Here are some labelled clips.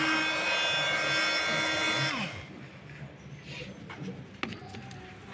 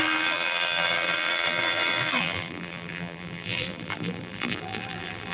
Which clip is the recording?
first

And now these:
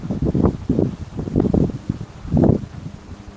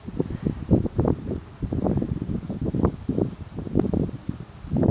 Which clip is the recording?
first